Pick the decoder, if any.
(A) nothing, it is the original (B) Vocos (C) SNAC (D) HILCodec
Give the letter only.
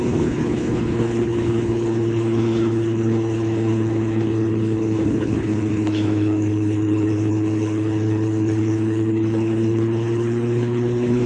D